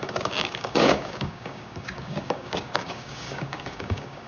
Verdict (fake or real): fake